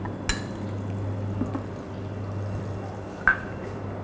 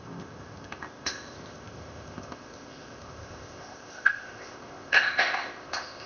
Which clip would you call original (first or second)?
first